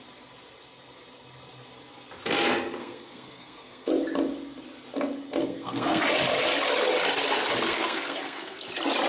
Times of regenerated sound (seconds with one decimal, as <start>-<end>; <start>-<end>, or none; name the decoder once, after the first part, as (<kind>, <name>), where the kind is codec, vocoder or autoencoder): 2.8-3.9 (codec, SNAC); 5.4-6.0; 7.7-8.7